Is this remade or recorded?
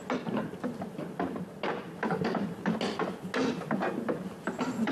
recorded